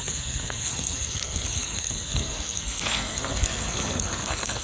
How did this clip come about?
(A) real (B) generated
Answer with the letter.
B